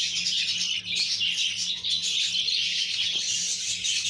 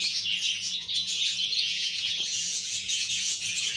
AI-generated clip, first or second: second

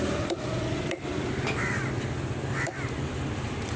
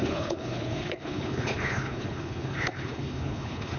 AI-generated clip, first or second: second